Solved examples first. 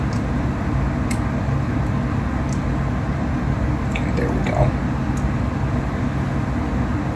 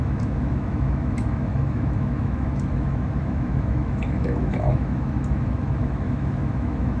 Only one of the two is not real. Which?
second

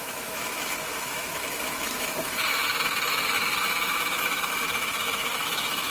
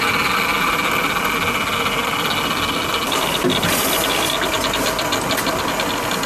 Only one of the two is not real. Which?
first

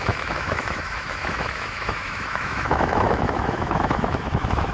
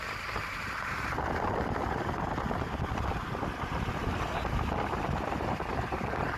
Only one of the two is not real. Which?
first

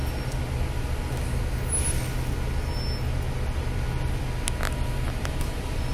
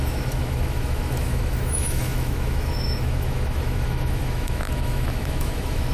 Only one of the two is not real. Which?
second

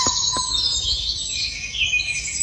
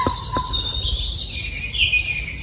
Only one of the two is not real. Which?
first